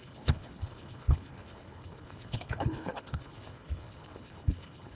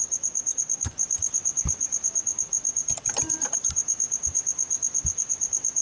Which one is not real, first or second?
first